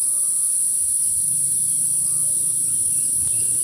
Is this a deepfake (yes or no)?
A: no